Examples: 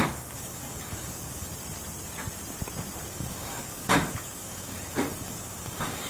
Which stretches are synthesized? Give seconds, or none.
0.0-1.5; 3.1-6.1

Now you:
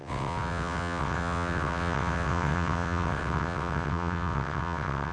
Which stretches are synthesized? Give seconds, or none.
0.0-5.1